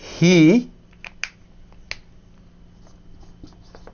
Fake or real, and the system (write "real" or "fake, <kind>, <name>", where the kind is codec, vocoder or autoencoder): real